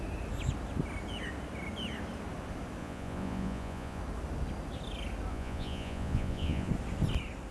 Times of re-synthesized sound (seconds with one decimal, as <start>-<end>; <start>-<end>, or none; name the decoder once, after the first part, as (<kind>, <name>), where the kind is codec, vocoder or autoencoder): 2.8-4.0 (vocoder, Vocos); 5.3-6.7